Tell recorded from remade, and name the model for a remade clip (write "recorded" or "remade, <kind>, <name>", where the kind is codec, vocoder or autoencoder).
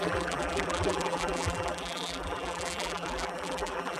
remade, vocoder, BigVGAN v2